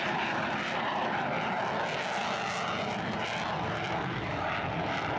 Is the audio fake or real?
real